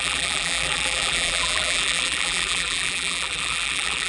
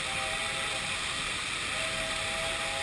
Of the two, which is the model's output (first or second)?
first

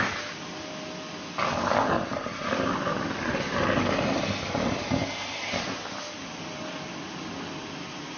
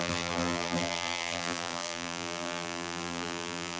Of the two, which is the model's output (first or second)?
second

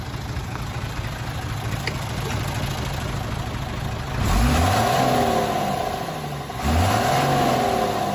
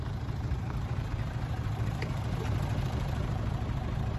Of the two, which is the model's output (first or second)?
second